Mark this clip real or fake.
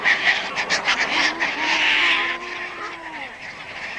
fake